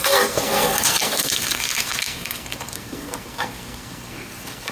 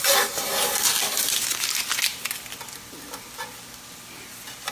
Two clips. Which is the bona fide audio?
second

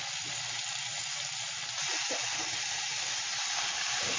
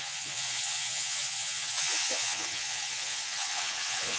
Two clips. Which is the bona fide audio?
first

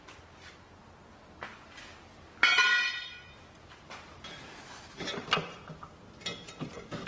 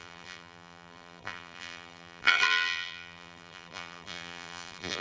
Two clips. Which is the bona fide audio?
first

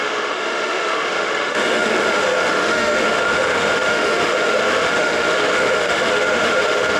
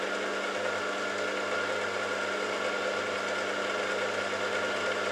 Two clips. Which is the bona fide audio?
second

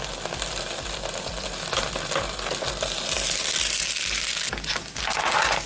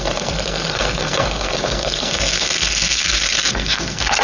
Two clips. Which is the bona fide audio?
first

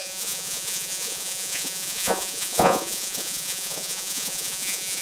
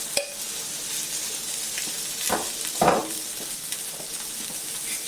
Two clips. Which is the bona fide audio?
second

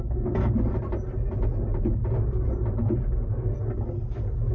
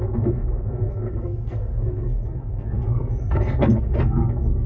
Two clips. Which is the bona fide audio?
first